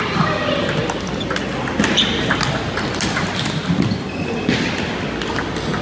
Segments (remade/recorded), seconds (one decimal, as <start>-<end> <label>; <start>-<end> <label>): 0.0-5.8 recorded